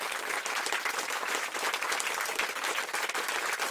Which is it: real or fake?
real